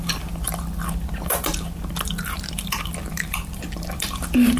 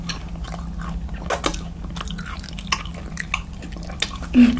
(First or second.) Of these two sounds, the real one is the second